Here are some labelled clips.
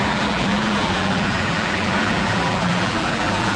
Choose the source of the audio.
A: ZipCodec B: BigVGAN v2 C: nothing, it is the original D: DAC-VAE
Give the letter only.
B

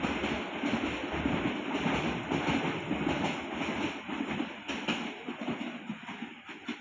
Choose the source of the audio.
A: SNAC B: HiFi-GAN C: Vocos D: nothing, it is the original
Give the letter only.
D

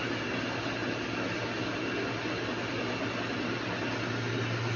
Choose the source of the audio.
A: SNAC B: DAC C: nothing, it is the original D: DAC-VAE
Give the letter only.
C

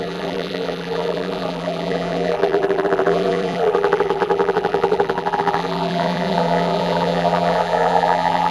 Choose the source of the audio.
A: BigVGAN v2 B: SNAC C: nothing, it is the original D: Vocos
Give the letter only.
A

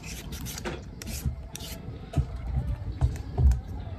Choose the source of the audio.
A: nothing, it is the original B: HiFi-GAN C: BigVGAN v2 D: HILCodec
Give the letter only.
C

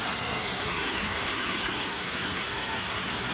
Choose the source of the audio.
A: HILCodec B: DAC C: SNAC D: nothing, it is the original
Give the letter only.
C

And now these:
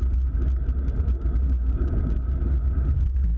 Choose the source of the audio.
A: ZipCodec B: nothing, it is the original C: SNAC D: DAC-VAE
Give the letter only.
B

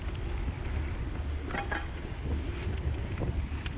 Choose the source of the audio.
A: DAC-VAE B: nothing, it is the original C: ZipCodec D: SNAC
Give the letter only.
B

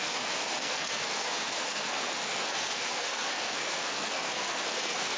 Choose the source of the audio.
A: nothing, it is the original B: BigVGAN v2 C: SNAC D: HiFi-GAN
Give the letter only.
C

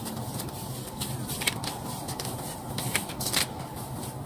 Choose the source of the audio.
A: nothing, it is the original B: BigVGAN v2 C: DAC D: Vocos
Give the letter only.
B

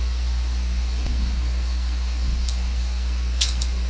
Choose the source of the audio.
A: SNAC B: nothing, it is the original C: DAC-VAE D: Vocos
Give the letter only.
A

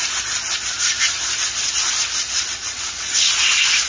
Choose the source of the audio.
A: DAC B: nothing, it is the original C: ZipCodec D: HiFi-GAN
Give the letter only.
B